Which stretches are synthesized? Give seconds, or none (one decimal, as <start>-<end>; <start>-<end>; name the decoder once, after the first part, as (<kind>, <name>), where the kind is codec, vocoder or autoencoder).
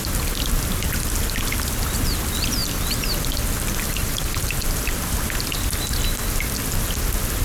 4.0-5.6 (vocoder, BigVGAN v2)